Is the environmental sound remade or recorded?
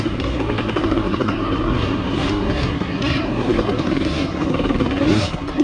remade